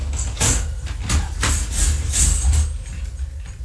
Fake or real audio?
real